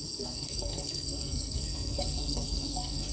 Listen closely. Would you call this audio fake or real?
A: fake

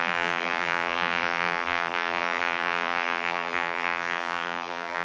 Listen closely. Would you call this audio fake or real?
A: fake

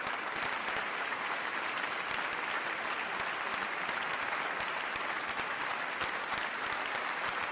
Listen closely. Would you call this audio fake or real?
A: real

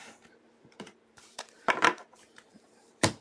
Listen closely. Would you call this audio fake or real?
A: fake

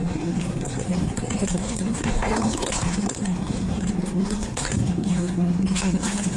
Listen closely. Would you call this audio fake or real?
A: fake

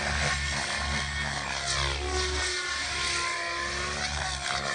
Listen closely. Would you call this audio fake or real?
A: real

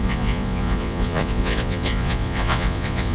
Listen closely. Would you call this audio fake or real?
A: fake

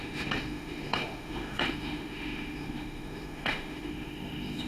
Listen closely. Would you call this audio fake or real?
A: fake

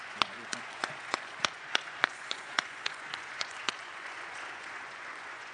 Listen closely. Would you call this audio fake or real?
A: fake